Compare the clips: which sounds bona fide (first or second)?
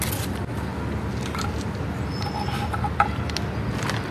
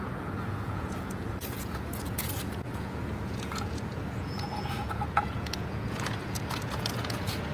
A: first